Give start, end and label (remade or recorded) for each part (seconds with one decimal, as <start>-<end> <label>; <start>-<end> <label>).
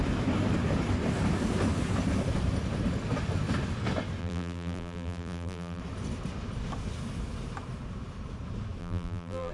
0.0-4.2 recorded; 4.2-5.8 remade; 5.8-8.8 recorded; 8.8-9.5 remade